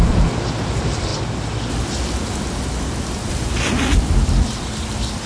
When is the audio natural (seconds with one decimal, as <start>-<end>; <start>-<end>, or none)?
0.0-5.3